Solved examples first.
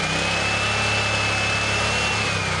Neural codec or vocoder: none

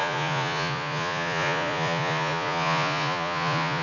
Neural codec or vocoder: vocoder, Vocos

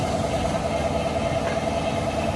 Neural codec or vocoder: none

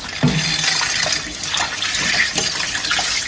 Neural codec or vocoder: none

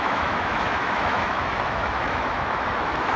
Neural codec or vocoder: autoencoder, DAC-VAE